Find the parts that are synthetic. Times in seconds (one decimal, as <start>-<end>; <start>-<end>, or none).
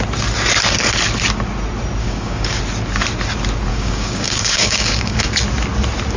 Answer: 2.0-2.6; 3.7-5.3